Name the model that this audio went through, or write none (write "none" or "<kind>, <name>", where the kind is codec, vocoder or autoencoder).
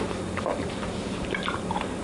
none